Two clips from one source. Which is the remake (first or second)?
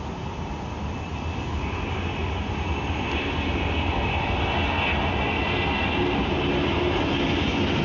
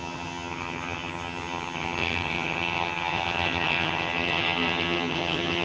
second